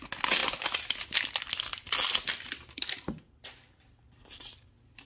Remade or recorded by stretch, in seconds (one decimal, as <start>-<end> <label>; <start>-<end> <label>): 0.0-5.1 recorded